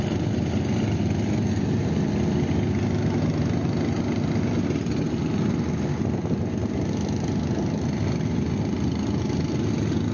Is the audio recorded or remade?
recorded